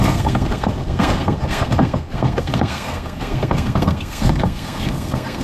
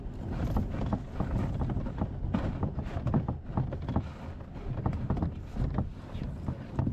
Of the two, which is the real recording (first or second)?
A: second